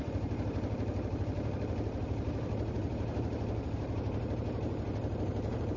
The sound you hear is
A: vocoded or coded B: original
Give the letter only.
A